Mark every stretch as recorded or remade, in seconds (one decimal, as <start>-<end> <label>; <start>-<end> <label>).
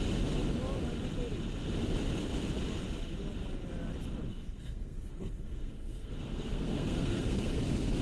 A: 0.0-4.3 recorded; 4.3-7.6 remade; 7.6-8.0 recorded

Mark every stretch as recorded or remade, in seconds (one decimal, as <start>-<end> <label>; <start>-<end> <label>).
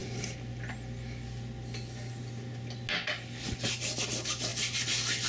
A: 0.0-5.3 recorded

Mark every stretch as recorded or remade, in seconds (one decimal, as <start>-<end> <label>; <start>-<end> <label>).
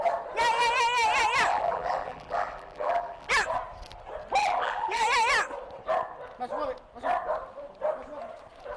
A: 0.0-1.5 recorded; 1.5-3.3 remade; 3.3-4.4 recorded; 4.4-5.0 remade; 5.0-8.8 recorded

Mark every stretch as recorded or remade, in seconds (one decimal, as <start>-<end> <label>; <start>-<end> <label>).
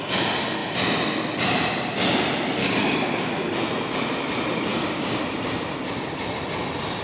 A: 0.0-2.6 recorded; 2.6-3.3 remade; 3.3-4.7 recorded; 4.7-5.2 remade; 5.2-7.0 recorded